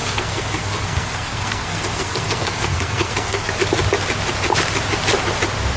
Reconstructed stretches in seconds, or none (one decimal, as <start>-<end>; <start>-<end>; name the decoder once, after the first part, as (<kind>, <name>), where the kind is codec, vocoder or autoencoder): 0.0-3.5 (codec, SNAC)